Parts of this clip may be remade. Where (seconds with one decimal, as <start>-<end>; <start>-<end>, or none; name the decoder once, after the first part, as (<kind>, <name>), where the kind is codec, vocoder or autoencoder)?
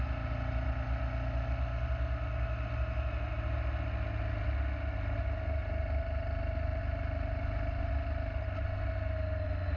none